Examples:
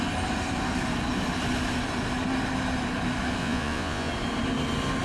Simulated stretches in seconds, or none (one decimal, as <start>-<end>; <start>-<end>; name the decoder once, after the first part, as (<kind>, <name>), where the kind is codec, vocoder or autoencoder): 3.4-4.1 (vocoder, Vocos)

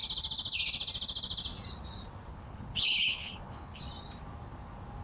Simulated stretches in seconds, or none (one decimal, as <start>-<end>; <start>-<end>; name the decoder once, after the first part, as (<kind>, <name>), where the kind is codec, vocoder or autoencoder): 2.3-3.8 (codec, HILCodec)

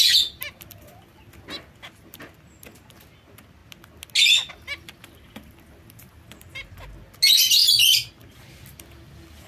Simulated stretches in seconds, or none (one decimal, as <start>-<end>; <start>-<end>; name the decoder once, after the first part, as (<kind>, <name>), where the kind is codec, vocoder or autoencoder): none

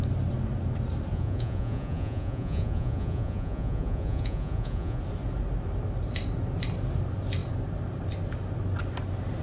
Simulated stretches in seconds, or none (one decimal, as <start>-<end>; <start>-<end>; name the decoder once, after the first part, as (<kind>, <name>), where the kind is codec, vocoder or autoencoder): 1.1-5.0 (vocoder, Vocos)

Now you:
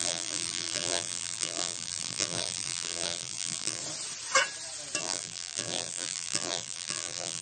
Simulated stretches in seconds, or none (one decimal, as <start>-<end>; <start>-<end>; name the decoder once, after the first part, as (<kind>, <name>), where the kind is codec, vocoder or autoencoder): 0.0-3.8 (vocoder, BigVGAN v2); 5.0-7.4

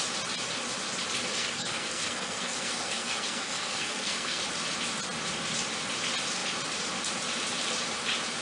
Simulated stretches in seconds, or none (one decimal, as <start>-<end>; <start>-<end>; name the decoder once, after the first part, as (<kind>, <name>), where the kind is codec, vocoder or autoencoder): 1.4-4.4 (codec, SNAC)

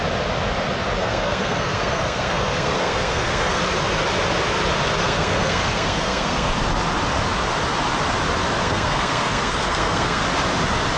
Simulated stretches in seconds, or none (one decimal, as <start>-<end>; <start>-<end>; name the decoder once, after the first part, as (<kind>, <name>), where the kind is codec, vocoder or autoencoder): 1.0-3.6 (codec, SNAC); 5.0-6.5; 8.6-10.2

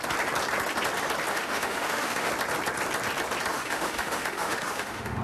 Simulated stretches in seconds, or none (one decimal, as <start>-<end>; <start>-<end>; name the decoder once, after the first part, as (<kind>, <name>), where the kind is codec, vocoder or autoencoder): 1.3-2.3 (autoencoder, DAC-VAE); 3.5-5.2